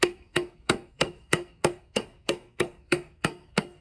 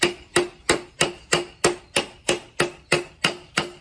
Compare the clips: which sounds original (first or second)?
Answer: second